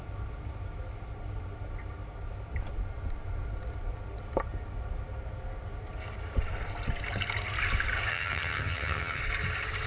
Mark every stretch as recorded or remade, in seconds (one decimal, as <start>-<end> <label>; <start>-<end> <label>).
0.0-8.1 recorded; 8.1-9.2 remade; 9.2-9.9 recorded